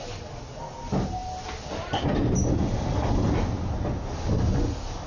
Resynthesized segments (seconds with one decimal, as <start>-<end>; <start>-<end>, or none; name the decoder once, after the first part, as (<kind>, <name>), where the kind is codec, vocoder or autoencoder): none